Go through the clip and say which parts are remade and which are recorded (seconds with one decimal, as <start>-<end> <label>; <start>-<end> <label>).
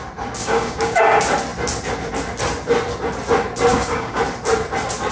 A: 0.0-0.4 recorded; 0.4-1.0 remade; 1.0-3.7 recorded; 3.7-4.2 remade; 4.2-5.1 recorded